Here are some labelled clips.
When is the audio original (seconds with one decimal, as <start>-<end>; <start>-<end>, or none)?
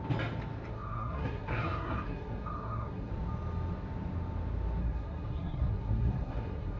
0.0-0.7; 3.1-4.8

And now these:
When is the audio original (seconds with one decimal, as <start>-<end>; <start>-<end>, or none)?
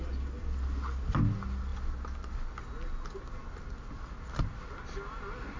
0.0-5.6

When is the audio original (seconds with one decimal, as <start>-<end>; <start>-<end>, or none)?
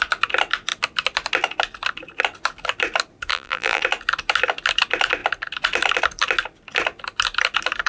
0.0-3.3; 3.8-7.9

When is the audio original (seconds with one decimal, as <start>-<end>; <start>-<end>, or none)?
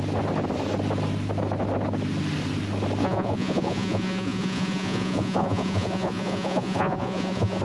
0.0-3.0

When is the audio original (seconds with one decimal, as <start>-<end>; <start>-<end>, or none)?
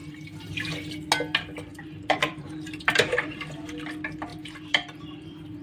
0.9-1.7; 3.5-4.3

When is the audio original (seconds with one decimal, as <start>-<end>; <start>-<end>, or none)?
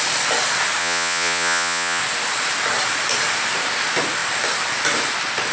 0.0-0.8; 2.0-5.5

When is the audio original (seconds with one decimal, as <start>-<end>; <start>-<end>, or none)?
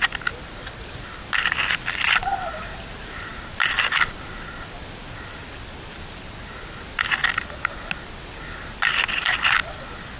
0.0-10.2